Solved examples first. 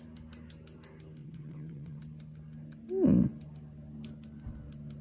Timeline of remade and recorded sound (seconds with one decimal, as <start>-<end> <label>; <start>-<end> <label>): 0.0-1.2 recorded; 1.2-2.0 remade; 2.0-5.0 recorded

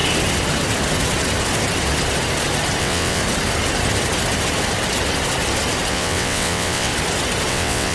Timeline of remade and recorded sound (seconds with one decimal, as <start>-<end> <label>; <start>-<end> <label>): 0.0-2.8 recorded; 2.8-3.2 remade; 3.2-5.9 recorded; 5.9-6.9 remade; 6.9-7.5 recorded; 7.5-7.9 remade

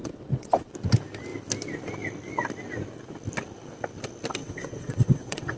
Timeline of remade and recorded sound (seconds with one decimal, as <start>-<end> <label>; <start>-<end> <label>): 0.0-0.7 remade; 0.7-4.4 recorded; 4.4-5.6 remade

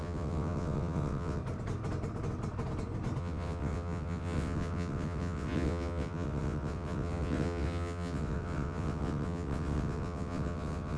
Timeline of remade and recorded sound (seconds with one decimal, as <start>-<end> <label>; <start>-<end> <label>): 0.0-1.4 remade; 1.4-3.2 recorded; 3.2-11.0 remade